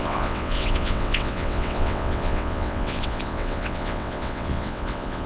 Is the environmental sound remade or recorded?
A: remade